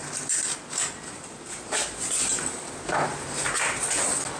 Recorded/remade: recorded